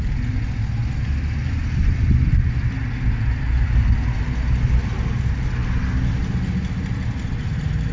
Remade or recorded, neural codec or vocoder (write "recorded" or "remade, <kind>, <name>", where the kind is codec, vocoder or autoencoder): recorded